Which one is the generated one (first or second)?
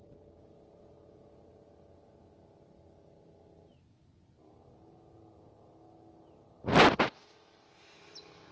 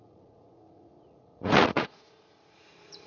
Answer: second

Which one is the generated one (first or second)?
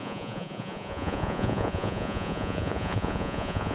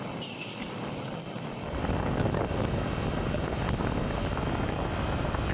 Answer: first